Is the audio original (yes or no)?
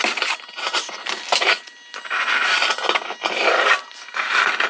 yes